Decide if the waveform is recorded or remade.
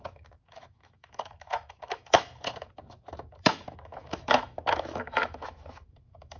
remade